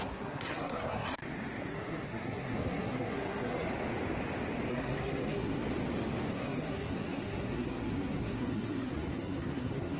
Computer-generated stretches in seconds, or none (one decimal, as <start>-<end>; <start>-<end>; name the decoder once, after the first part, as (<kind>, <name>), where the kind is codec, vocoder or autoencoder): 0.0-1.2 (codec, SNAC); 1.7-3.7; 4.7-5.6; 6.3-10.0